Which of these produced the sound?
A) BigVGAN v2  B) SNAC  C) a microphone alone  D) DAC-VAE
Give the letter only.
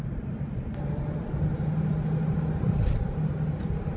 C